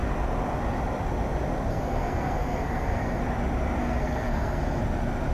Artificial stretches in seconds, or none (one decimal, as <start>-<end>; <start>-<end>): 1.7-3.2; 3.8-4.8